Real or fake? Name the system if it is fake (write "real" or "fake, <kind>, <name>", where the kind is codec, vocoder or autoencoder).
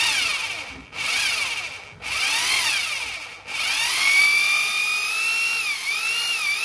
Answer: real